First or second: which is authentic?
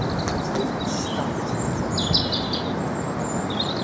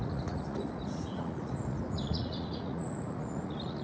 first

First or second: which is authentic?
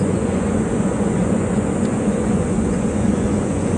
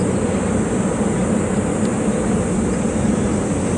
second